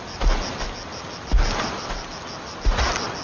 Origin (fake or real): real